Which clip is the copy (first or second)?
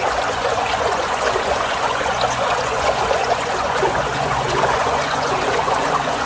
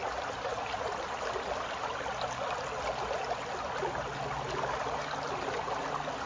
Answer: first